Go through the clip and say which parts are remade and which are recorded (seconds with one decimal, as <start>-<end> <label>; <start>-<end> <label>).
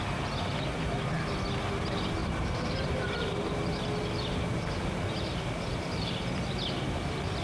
0.0-2.2 recorded; 2.2-3.5 remade; 3.5-7.4 recorded